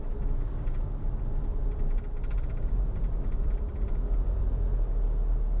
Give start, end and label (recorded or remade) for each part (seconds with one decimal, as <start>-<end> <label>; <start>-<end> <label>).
0.0-1.5 recorded; 1.5-4.5 remade; 4.5-5.6 recorded